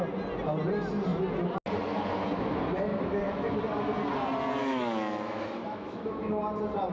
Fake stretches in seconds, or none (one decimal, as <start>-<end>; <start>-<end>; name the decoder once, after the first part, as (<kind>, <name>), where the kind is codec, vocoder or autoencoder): 2.9-3.6 (autoencoder, DAC-VAE); 4.6-6.3